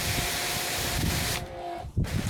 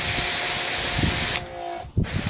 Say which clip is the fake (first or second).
first